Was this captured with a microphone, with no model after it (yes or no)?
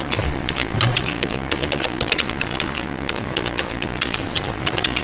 no